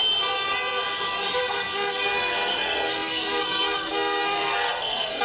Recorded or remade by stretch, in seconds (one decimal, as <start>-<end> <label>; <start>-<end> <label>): 0.0-1.4 recorded; 1.4-5.2 remade